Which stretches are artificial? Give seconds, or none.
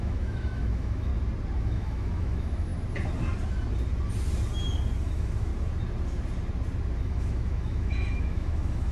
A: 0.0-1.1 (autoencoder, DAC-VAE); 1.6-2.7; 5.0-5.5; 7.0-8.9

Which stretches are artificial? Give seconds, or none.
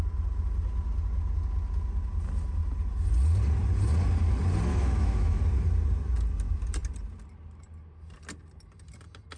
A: 4.7-5.4 (autoencoder, DAC-VAE)